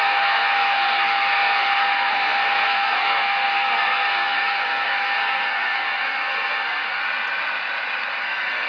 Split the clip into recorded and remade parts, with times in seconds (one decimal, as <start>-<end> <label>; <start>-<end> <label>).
0.0-7.0 remade; 7.0-8.2 recorded; 8.2-8.7 remade